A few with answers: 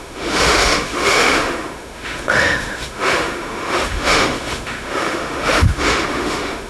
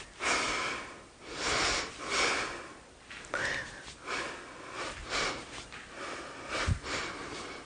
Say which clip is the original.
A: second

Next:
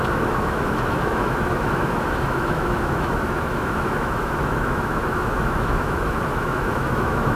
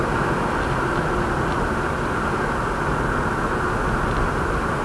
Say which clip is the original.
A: second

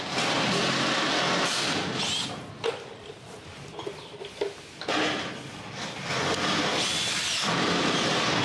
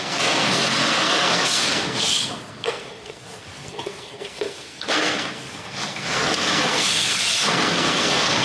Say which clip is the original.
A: first